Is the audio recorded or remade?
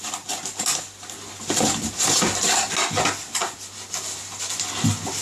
recorded